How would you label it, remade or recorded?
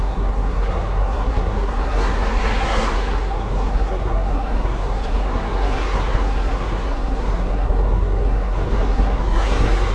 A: remade